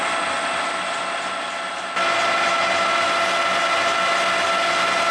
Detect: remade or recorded recorded